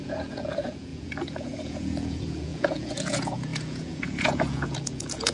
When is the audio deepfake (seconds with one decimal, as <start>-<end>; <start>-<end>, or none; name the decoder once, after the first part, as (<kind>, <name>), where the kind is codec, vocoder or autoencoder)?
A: 0.0-5.3 (vocoder, Vocos)